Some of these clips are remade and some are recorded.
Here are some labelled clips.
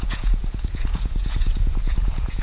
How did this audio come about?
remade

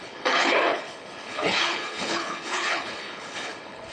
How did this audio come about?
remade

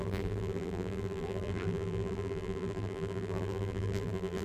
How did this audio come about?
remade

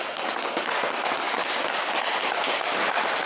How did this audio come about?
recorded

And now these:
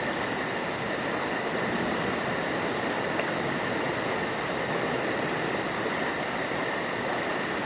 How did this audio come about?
recorded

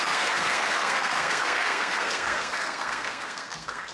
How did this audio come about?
remade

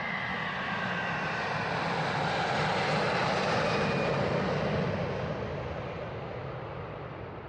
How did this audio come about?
recorded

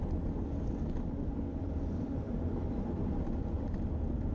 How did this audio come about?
recorded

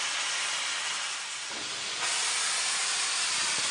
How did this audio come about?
recorded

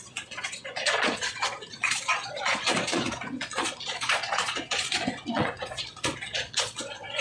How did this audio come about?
remade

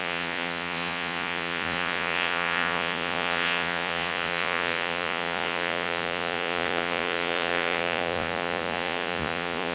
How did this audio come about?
remade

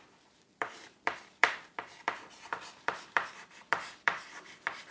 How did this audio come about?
remade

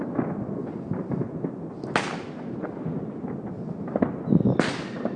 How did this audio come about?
recorded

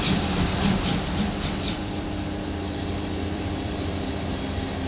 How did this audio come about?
remade